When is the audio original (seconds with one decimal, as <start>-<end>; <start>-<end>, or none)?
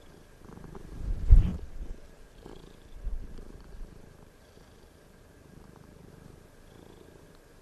0.0-1.5; 6.1-7.6